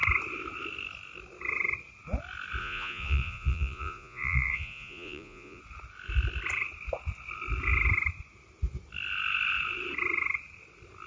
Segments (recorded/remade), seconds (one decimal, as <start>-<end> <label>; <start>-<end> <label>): 0.0-2.6 recorded; 2.6-5.6 remade; 5.6-11.1 recorded